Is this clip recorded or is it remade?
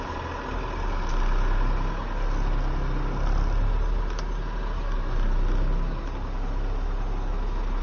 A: recorded